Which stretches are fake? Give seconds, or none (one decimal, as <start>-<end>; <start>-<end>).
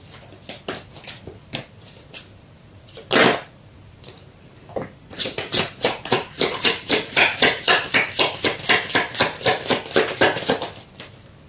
5.0-7.8